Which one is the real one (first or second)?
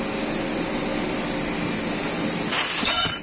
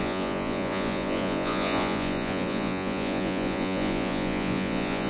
first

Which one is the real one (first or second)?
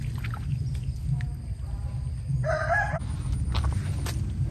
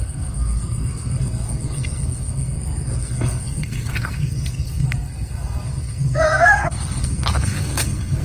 first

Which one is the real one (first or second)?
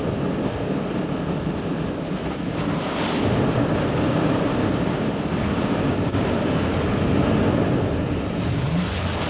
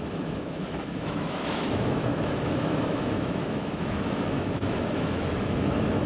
first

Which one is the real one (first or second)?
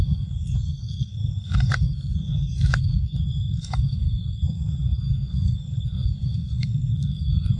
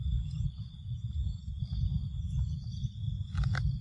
second